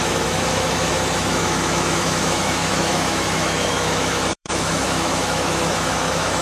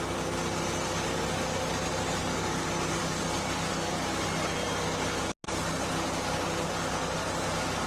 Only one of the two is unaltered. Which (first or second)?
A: second